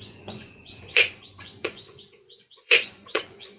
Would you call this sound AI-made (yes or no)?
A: yes